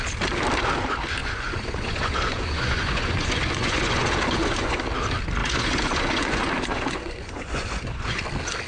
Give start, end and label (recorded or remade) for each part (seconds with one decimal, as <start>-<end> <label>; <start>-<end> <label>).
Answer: 0.0-1.2 recorded; 1.2-4.8 remade; 4.8-5.4 recorded; 5.4-8.2 remade; 8.2-8.7 recorded